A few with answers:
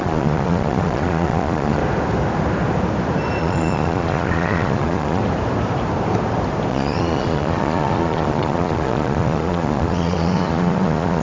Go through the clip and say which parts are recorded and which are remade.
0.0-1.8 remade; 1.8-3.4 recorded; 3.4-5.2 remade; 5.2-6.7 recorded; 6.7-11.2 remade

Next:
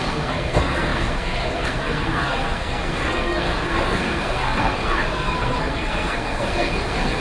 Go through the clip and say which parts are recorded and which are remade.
0.0-7.2 remade

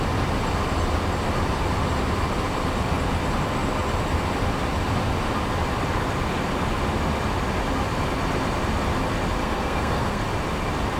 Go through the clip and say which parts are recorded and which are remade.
0.0-9.4 recorded; 9.4-10.2 remade; 10.2-11.0 recorded

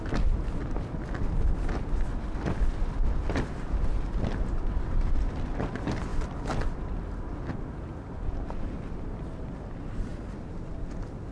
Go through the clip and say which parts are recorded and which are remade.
0.0-11.3 recorded